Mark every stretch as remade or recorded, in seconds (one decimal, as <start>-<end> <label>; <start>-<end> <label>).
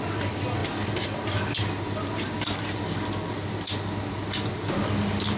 0.0-5.4 recorded